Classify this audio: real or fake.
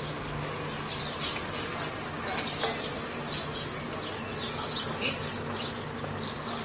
real